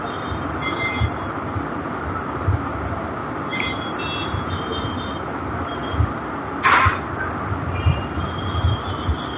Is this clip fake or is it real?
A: real